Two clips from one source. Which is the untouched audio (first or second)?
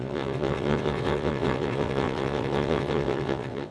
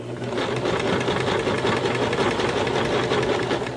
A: second